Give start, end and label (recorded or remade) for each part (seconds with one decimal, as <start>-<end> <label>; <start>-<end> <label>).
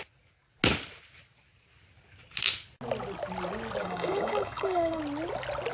0.0-3.8 recorded; 3.8-5.0 remade; 5.0-5.7 recorded